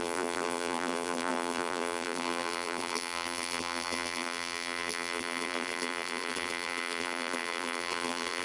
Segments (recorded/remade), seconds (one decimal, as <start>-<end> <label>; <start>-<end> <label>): 0.0-8.4 remade